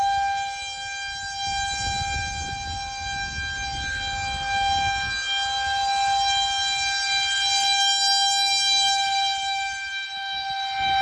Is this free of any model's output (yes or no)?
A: yes